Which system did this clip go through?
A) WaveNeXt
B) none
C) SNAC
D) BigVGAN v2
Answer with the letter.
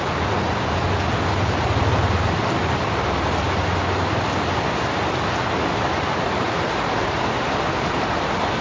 B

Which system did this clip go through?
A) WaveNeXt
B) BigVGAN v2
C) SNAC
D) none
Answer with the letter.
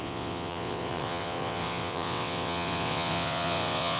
A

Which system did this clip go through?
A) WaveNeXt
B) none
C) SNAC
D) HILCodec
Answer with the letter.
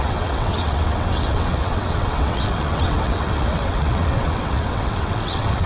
A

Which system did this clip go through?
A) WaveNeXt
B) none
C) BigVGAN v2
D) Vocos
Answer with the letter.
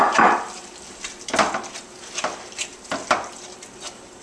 B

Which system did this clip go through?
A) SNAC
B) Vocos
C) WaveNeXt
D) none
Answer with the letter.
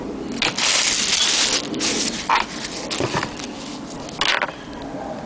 D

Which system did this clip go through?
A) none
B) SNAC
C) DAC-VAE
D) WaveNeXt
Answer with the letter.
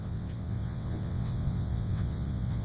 D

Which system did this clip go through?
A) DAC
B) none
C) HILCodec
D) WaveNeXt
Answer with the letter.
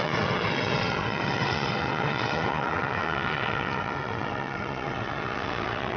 D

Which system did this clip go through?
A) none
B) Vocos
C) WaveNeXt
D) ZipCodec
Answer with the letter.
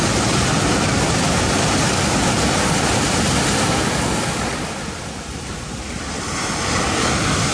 A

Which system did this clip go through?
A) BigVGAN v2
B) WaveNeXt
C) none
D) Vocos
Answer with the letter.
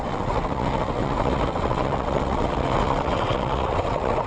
B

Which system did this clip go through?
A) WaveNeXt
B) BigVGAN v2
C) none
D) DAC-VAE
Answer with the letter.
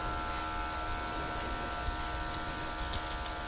C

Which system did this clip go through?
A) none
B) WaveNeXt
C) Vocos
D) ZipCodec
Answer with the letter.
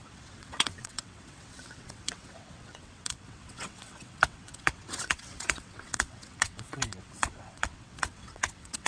B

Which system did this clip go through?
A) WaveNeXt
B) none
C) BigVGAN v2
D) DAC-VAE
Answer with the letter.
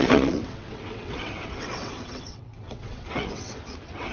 A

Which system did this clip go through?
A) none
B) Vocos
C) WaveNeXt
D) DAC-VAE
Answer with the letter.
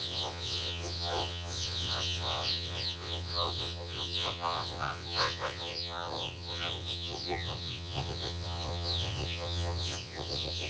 C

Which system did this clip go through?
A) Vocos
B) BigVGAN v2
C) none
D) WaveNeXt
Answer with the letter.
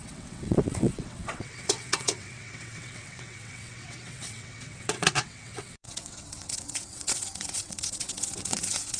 D